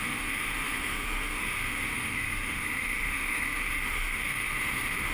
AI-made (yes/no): yes